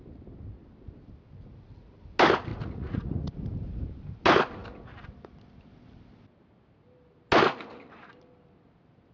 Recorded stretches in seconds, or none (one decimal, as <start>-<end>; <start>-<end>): 0.0-2.5; 3.3-9.1